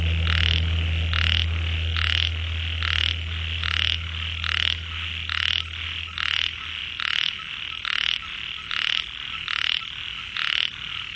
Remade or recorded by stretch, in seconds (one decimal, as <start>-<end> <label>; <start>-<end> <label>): 0.0-11.2 recorded